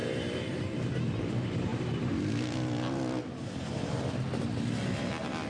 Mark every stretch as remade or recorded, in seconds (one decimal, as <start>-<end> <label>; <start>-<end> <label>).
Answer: 0.0-0.6 remade; 0.6-5.5 recorded